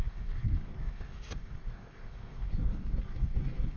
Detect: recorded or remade remade